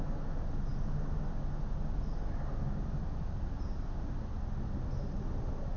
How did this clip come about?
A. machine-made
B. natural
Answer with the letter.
B